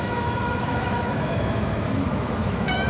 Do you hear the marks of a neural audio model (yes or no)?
yes